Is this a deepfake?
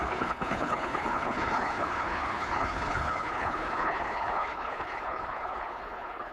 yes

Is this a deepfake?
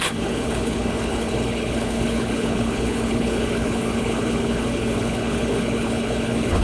yes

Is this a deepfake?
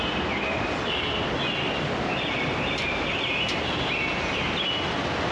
no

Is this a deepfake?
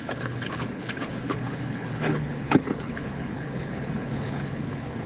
yes